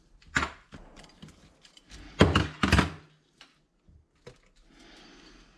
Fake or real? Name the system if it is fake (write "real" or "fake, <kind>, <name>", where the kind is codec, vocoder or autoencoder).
real